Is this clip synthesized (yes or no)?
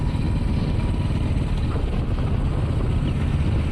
no